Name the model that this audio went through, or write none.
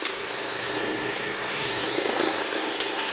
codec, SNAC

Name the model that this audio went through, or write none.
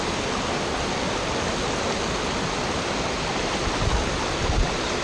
none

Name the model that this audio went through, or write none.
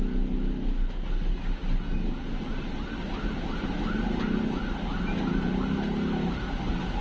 none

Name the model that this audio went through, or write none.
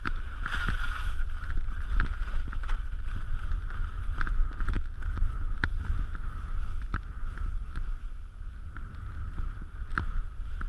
none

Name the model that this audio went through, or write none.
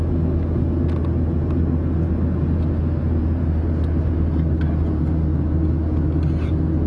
none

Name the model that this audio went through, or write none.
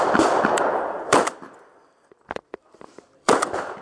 vocoder, BigVGAN v2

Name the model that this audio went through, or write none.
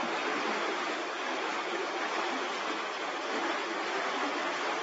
none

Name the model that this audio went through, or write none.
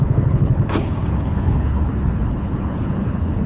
codec, HILCodec